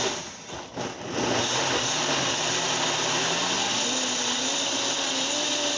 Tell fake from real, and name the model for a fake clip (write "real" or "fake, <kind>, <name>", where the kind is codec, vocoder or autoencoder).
real